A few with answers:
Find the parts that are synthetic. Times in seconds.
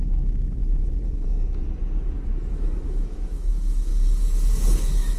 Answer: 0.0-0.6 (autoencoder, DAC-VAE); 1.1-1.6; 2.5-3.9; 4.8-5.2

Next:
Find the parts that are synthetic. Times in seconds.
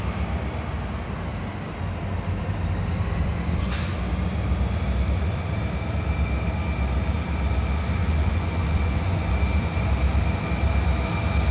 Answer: 3.2-3.9 (vocoder, Vocos); 8.0-9.3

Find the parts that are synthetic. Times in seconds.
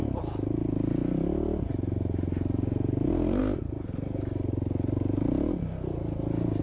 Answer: none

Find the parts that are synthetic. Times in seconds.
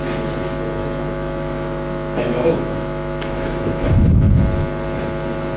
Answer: 0.8-4.2 (autoencoder, DAC-VAE)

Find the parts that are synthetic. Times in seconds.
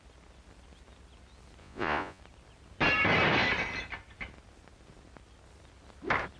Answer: 1.6-2.2 (vocoder, Vocos)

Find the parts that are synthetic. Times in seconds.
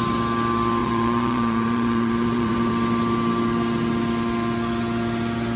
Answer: 0.8-2.7 (vocoder, Vocos)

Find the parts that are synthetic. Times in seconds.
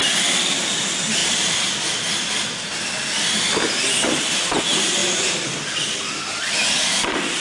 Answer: 1.2-4.6 (vocoder, BigVGAN v2); 5.0-7.4